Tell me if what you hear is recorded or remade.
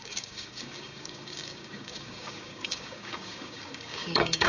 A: remade